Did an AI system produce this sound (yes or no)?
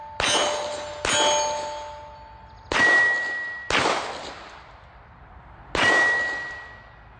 no